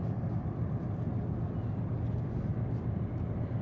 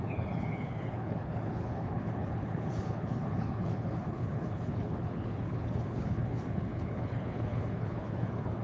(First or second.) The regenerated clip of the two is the second